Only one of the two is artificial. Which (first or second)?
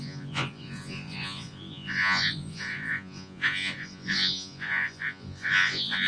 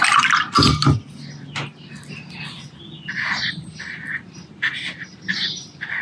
first